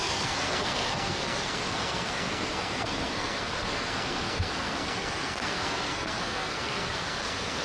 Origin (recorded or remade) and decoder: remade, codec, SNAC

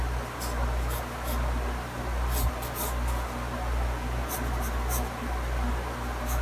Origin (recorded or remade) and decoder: recorded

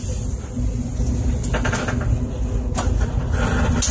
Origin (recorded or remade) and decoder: recorded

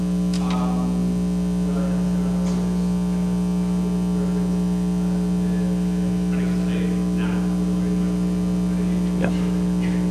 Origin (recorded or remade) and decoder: recorded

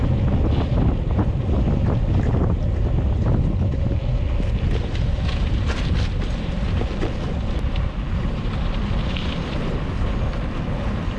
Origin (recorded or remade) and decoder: recorded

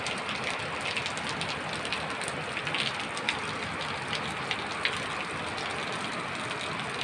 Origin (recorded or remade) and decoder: recorded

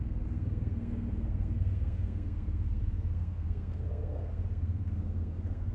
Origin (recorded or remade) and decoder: remade, codec, SNAC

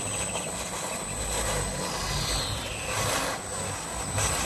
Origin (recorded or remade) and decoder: recorded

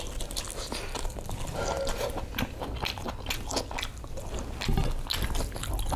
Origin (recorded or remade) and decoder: recorded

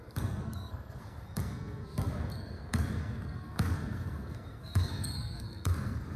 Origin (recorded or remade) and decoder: remade, codec, SNAC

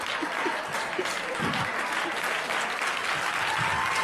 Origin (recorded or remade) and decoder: recorded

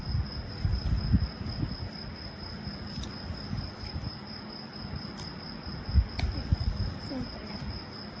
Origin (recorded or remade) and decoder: recorded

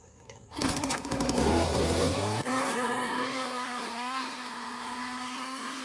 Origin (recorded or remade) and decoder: remade, codec, SNAC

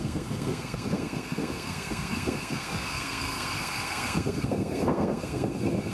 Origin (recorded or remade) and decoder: remade, codec, SNAC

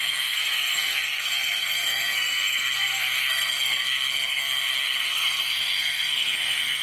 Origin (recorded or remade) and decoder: remade, codec, SNAC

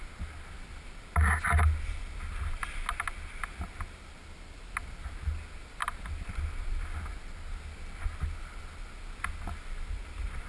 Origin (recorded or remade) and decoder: recorded